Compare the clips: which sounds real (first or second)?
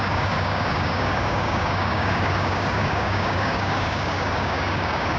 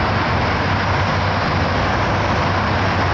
second